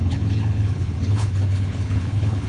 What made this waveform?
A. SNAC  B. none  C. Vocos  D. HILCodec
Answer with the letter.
D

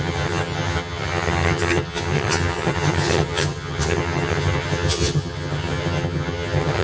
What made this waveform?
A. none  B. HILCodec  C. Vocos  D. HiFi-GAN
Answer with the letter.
D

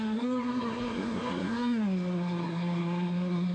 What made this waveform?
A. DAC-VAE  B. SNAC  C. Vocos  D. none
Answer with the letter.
B